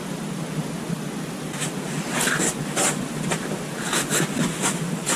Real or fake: real